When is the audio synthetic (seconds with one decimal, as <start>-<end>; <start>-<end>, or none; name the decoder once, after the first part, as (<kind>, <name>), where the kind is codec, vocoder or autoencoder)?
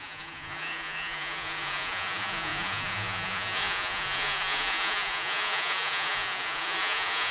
0.0-7.3 (vocoder, Vocos)